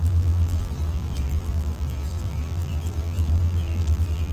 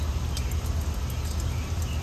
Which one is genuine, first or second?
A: second